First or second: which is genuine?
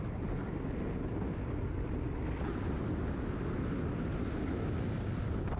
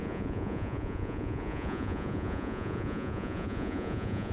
first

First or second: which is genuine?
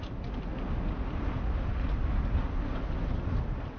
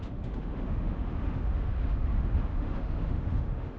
first